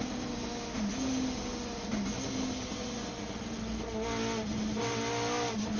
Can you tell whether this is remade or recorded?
recorded